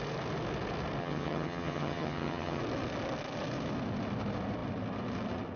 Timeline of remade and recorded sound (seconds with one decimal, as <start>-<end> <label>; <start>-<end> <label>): 0.0-1.0 recorded; 1.0-2.6 remade; 2.6-5.6 recorded